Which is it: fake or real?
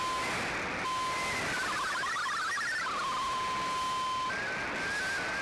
real